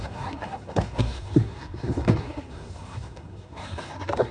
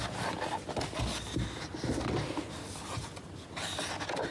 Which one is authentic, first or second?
second